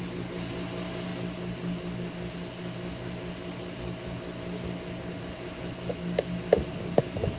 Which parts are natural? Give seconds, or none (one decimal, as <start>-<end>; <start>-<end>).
0.0-7.4